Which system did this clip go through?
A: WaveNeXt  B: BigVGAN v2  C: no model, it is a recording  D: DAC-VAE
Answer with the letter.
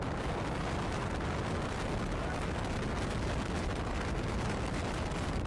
C